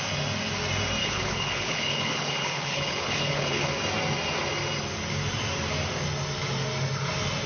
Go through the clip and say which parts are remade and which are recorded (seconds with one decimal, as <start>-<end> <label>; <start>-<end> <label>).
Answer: 0.0-1.0 recorded; 1.0-3.7 remade; 3.7-7.5 recorded